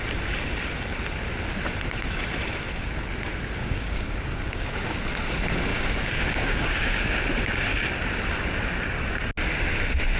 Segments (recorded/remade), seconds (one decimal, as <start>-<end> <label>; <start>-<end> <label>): 0.0-3.6 recorded; 3.6-5.0 remade; 5.0-5.7 recorded; 5.7-7.2 remade; 7.2-10.2 recorded